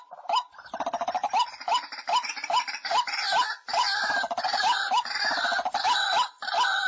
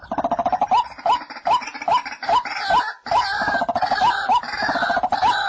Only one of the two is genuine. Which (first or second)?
second